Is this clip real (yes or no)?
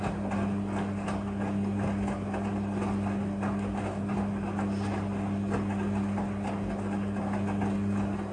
yes